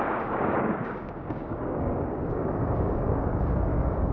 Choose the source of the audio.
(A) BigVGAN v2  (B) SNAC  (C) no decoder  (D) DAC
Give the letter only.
D